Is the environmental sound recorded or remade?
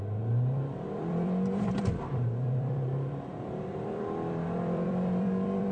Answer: remade